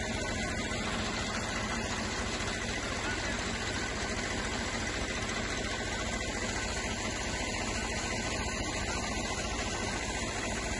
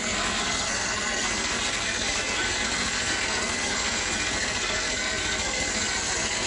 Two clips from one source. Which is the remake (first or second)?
second